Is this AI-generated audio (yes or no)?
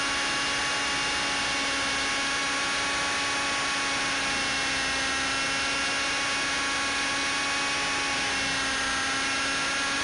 no